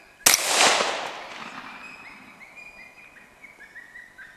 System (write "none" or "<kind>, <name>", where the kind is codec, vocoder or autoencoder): none